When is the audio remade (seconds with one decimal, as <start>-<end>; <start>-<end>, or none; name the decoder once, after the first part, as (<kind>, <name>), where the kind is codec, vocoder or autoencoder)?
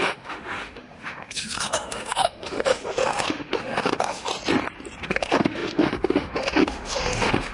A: 0.0-4.3 (autoencoder, DAC-VAE); 5.0-7.5